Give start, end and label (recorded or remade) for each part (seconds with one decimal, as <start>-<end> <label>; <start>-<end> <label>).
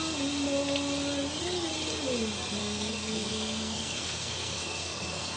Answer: 0.0-2.6 recorded; 2.6-5.4 remade